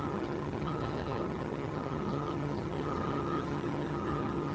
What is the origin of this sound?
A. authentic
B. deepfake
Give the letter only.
B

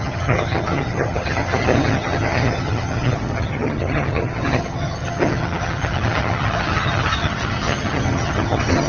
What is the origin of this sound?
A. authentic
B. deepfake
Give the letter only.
B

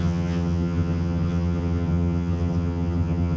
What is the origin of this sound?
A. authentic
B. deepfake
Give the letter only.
B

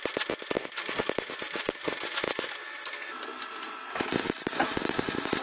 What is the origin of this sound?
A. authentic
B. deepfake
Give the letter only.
A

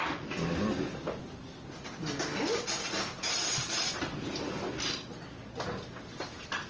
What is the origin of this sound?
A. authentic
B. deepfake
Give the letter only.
A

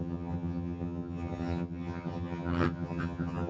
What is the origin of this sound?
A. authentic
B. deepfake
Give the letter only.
B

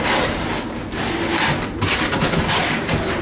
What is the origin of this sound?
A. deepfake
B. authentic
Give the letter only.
B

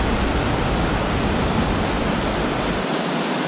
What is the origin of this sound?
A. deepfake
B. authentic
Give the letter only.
B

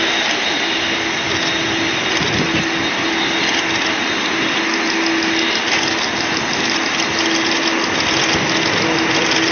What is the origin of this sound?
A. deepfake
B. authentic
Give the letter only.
B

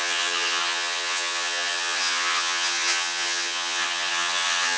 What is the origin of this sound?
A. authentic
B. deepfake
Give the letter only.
B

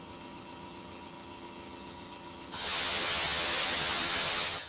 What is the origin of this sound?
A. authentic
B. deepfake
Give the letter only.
B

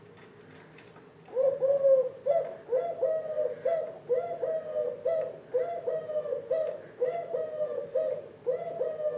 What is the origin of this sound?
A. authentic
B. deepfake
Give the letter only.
A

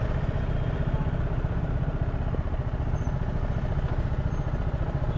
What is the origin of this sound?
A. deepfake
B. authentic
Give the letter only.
B